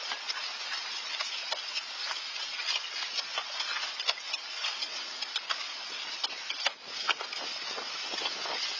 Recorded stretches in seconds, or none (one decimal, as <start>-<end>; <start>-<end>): 0.0-8.8